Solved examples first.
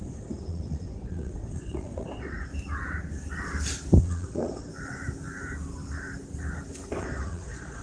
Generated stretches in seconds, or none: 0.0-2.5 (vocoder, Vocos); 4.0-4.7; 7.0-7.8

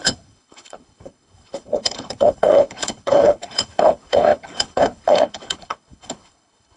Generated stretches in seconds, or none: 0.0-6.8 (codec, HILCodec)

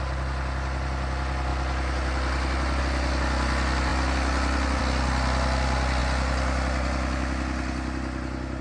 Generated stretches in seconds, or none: none